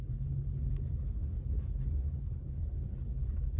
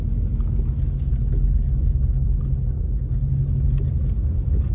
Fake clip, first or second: first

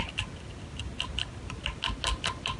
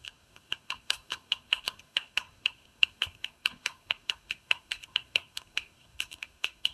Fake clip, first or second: second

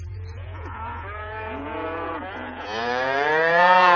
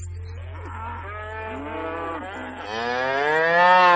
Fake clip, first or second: first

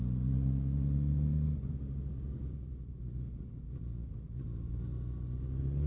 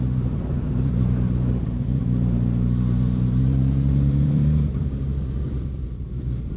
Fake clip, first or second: second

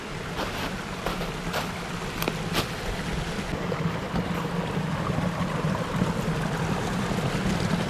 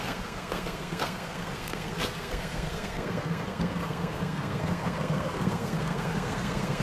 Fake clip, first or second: second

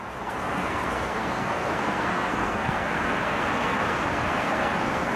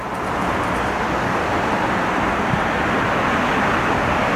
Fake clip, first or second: first